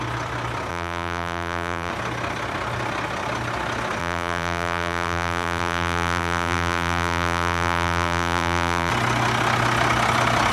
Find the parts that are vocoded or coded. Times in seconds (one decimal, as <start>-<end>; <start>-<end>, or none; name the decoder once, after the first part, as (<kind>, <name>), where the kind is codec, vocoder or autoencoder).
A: 0.7-1.9 (vocoder, BigVGAN v2); 4.0-8.9